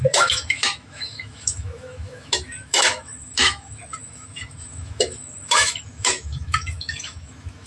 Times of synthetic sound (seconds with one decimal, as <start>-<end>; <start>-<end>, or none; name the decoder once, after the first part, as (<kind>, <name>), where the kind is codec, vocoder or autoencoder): 0.0-7.7 (autoencoder, DAC-VAE)